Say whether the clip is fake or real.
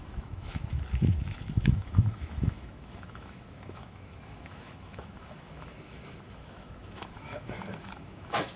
fake